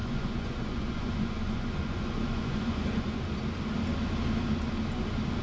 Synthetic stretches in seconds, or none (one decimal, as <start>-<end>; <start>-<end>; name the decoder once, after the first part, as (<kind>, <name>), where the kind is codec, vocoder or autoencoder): 0.0-3.2 (vocoder, Vocos)